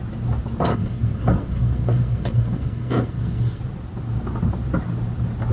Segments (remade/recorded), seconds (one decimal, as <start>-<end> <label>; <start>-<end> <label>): 0.0-0.7 recorded; 0.7-3.6 remade; 3.6-5.5 recorded